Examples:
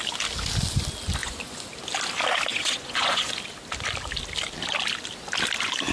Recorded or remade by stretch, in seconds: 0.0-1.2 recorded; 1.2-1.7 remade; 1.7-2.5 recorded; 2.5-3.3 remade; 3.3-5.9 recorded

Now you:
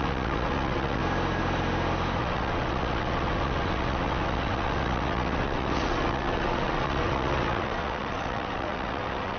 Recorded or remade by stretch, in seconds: 0.0-1.0 remade; 1.0-2.2 recorded; 2.2-9.4 remade

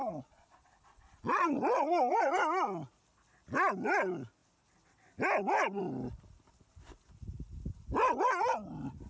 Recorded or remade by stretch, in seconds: 0.0-2.4 remade; 2.4-9.1 recorded

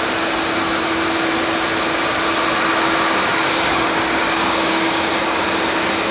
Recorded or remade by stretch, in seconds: 0.0-3.3 recorded; 3.3-5.1 remade; 5.1-6.1 recorded

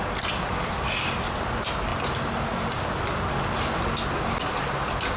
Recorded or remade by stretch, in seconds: 0.0-5.2 recorded

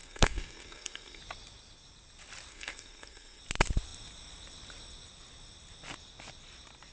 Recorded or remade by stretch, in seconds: 0.0-1.2 remade; 1.2-2.5 recorded; 2.5-3.4 remade; 3.4-6.9 recorded

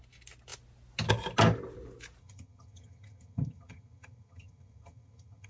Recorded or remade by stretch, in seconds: 0.0-2.2 recorded; 2.2-5.5 remade

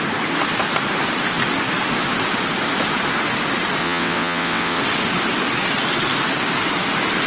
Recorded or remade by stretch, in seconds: 0.0-3.8 recorded; 3.8-4.8 remade; 4.8-7.3 recorded